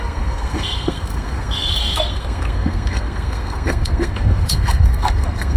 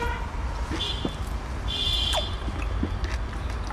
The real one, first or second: second